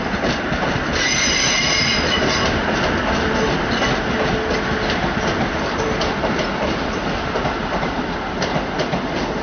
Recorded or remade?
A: recorded